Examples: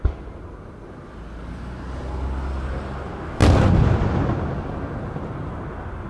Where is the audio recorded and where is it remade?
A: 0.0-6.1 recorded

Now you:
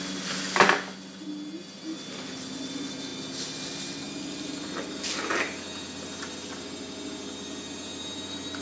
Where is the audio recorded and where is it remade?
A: 0.0-8.6 recorded

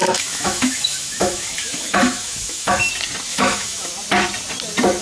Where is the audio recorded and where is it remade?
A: 0.0-2.9 remade; 2.9-3.3 recorded; 3.3-3.9 remade; 3.9-5.0 recorded

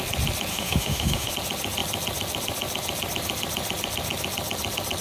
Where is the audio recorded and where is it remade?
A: 0.0-0.5 recorded; 0.5-1.3 remade; 1.3-5.0 recorded